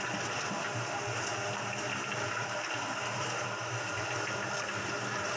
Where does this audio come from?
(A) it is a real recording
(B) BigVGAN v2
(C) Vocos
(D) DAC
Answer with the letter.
A